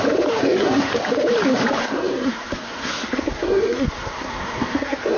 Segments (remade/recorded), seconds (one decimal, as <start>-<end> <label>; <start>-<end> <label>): 0.0-0.4 recorded; 0.4-0.9 remade; 0.9-1.8 recorded; 1.8-5.2 remade